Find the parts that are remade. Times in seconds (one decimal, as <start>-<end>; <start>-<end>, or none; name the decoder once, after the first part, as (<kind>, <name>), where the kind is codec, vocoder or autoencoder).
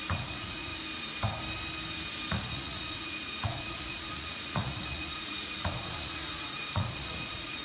0.0-0.7 (vocoder, Vocos); 2.3-7.6